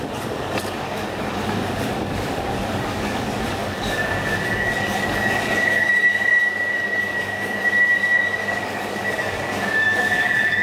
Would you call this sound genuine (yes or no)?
no